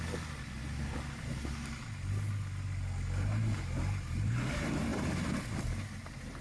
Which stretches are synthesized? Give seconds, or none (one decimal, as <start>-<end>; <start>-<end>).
0.0-0.6; 4.2-4.9; 5.6-6.4